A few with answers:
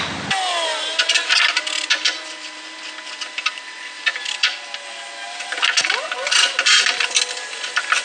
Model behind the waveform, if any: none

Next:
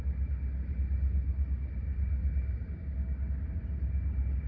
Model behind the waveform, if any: none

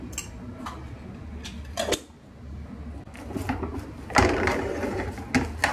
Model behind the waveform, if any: none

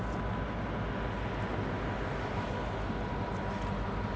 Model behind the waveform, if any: none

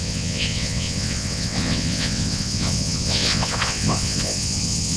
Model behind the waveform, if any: vocoder, WaveNeXt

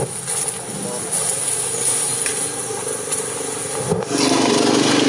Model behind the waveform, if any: none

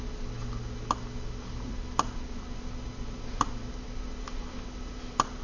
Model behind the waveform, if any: none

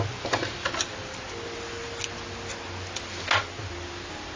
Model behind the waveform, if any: none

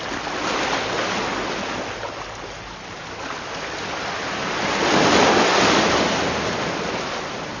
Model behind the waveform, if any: none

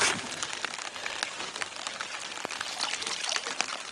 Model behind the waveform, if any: none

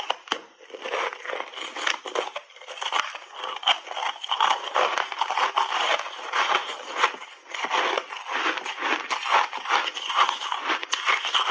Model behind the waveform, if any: none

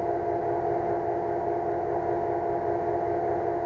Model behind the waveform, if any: none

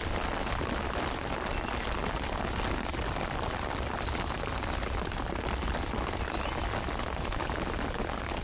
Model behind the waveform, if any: none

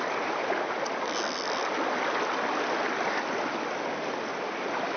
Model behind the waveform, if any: none